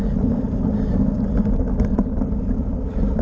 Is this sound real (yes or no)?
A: yes